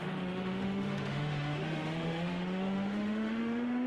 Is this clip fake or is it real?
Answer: fake